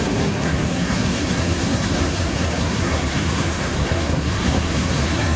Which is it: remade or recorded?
remade